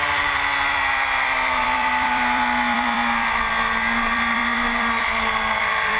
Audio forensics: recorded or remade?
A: remade